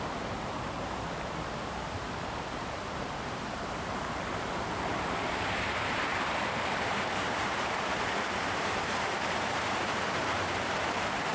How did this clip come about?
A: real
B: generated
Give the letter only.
B